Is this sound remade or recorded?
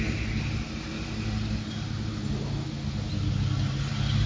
recorded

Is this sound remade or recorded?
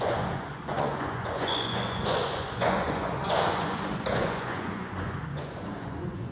remade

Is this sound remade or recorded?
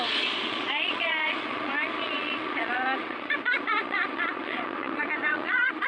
remade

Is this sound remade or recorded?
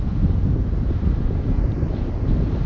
recorded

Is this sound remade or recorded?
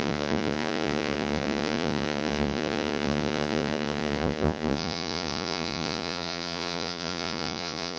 remade